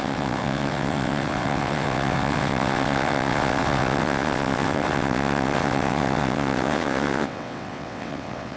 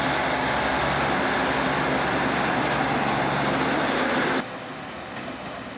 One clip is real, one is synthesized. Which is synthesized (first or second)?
first